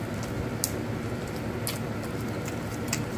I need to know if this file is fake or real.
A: real